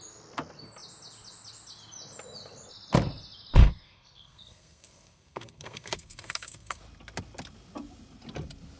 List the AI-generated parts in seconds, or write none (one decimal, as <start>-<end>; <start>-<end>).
3.6-6.8